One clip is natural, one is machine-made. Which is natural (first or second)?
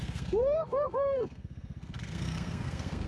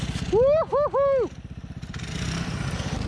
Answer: second